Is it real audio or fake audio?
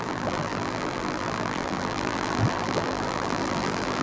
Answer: fake